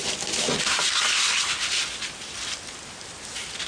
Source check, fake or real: real